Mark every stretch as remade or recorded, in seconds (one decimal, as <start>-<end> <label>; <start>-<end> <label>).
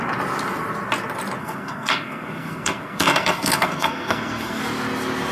0.0-1.4 recorded; 1.4-4.6 remade; 4.6-5.3 recorded